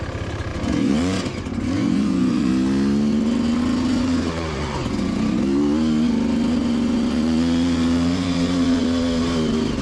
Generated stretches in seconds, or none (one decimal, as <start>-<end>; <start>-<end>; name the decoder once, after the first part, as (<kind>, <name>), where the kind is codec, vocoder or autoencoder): 0.5-2.5 (vocoder, Vocos); 3.9-5.3; 6.6-8.8